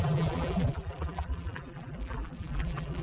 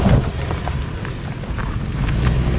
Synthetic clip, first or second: first